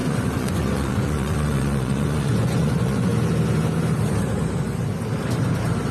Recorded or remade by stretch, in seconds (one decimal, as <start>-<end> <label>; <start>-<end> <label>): 0.0-3.1 remade; 3.1-5.9 recorded